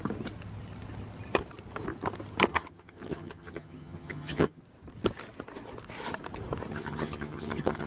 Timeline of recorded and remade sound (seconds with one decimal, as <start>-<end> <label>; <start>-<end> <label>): 0.0-2.5 recorded; 2.5-4.6 remade; 4.6-6.7 recorded; 6.7-7.9 remade